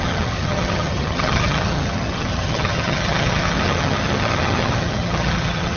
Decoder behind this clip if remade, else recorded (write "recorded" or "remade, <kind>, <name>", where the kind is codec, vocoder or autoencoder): remade, vocoder, HiFi-GAN